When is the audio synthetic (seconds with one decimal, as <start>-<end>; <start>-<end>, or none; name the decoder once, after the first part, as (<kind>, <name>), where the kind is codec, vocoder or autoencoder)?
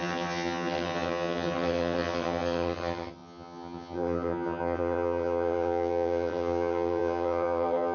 0.0-7.9 (vocoder, HiFi-GAN)